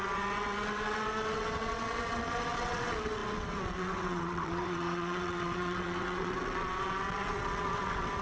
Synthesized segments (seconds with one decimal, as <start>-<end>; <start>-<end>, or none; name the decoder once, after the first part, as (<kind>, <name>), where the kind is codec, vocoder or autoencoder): 0.0-8.2 (vocoder, WaveNeXt)